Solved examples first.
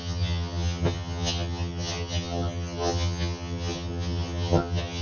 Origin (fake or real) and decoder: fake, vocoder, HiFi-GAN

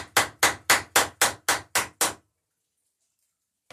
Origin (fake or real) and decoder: real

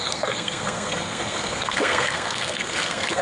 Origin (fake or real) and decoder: fake, codec, SNAC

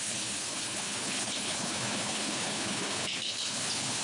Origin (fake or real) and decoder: fake, codec, HILCodec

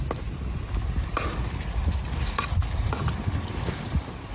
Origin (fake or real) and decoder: real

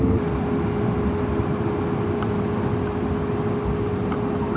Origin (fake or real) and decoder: real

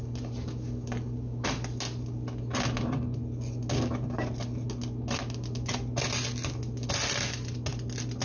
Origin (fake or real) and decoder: real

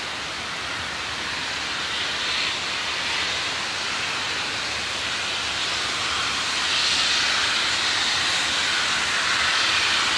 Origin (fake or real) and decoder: real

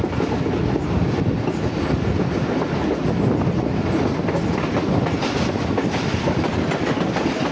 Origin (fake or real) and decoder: real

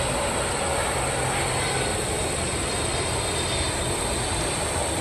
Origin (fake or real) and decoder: real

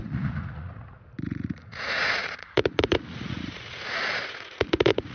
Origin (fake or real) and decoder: fake, vocoder, Vocos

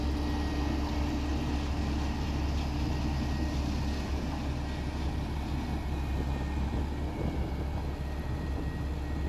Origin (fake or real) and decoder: real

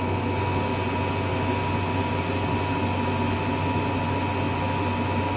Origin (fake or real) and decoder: real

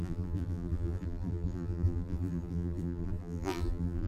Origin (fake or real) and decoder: fake, vocoder, BigVGAN v2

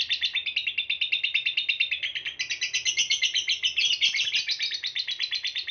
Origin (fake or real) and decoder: real